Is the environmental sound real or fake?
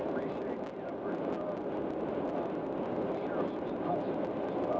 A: real